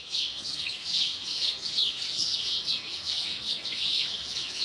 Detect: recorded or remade remade